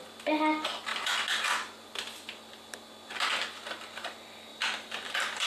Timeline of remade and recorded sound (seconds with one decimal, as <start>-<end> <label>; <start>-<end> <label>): 0.0-4.5 recorded; 4.5-5.5 remade